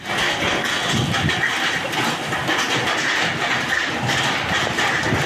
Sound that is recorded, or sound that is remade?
recorded